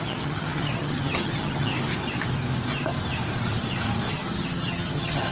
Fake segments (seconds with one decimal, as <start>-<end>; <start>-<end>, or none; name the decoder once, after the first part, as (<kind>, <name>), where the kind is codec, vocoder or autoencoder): 0.0-1.7 (vocoder, HiFi-GAN); 4.1-5.3